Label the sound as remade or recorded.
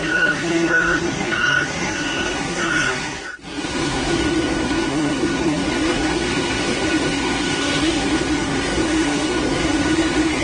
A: remade